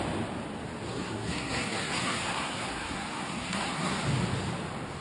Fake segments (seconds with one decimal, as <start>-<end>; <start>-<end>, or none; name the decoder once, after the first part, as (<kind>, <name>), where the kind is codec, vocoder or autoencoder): 0.9-3.9 (codec, SNAC)